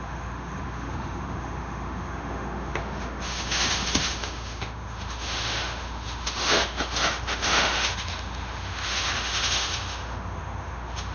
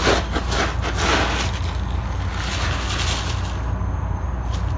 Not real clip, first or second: first